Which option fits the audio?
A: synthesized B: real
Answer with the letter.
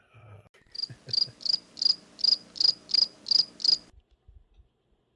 B